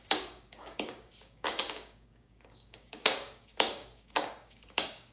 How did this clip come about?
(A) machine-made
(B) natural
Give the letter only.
A